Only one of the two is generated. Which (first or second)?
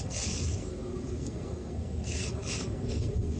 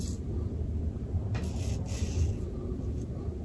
first